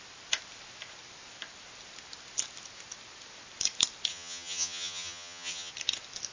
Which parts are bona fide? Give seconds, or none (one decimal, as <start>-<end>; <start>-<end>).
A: 0.0-4.1; 5.7-6.3